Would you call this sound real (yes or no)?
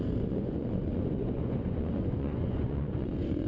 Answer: no